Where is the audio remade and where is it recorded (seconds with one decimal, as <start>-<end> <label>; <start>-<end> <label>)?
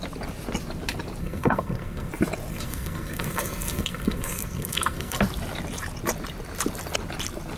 0.0-1.2 recorded; 1.2-2.1 remade; 2.1-2.5 recorded; 2.5-5.2 remade; 5.2-7.6 recorded